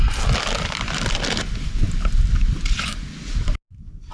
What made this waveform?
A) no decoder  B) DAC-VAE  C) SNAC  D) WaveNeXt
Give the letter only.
A